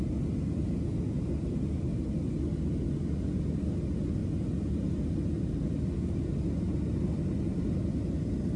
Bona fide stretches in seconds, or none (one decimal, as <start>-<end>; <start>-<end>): 0.0-8.6